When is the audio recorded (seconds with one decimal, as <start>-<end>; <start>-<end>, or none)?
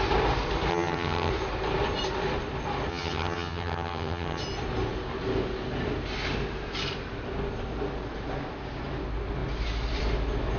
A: 0.0-0.7; 1.3-2.9; 4.4-10.6